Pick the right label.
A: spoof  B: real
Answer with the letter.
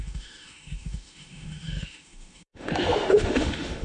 A